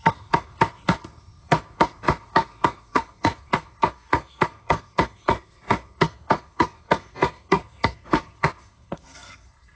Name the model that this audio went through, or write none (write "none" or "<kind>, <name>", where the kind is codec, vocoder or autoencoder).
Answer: codec, SNAC